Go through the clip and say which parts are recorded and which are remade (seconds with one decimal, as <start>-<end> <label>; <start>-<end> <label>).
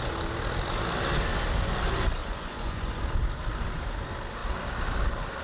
0.0-2.2 recorded; 2.2-3.0 remade; 3.0-5.4 recorded